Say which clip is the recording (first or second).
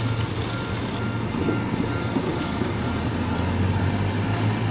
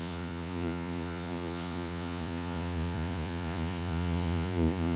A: first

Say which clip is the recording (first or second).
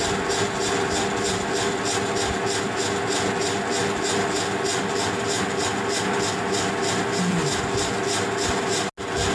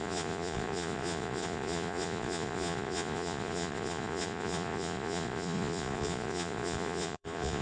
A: first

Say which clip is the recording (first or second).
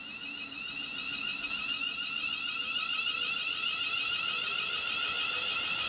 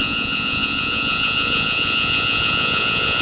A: first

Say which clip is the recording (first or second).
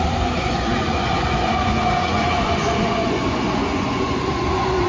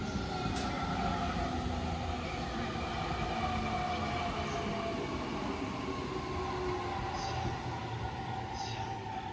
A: second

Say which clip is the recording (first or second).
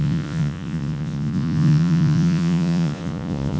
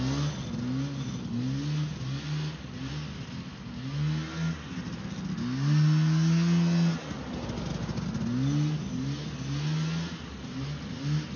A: second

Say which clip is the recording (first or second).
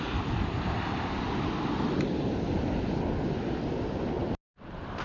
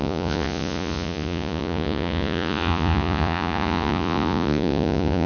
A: first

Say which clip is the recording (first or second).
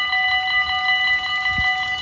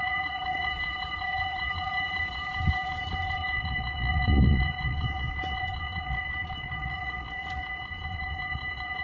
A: first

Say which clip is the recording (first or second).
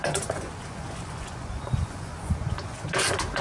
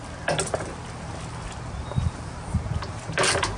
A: second